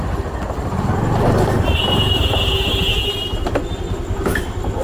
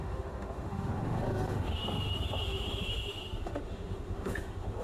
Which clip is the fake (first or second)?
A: second